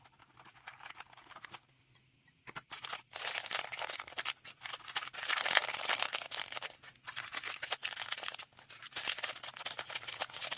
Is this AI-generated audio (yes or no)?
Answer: no